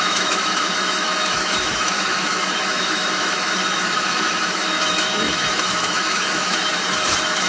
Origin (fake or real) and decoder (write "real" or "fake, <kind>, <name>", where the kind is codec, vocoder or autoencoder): fake, autoencoder, DAC-VAE